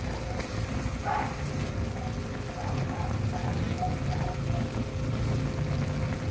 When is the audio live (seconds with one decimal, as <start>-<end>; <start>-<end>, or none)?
0.0-6.3